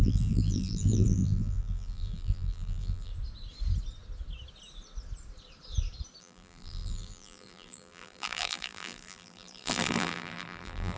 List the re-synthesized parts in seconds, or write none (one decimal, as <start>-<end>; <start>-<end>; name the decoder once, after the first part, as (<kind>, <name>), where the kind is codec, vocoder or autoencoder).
0.0-3.1 (vocoder, BigVGAN v2); 6.2-11.0